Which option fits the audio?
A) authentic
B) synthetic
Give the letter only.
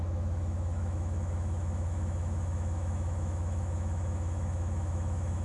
B